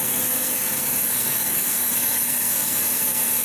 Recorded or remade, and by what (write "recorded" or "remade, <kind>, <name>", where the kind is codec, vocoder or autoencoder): remade, codec, SNAC